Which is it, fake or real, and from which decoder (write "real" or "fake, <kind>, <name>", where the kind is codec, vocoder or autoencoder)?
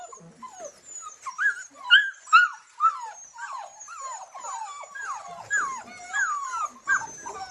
real